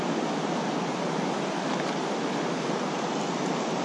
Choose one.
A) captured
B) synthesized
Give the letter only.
A